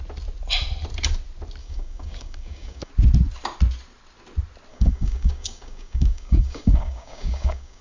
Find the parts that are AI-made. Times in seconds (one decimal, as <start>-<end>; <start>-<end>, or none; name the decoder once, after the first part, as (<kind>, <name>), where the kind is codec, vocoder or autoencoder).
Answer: 1.6-2.9 (codec, DAC); 4.7-7.8